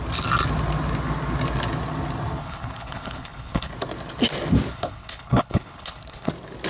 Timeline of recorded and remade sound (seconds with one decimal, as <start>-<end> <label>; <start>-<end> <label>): 0.0-2.4 recorded; 2.4-3.7 remade; 3.7-4.7 recorded; 4.7-6.3 remade; 6.3-6.7 recorded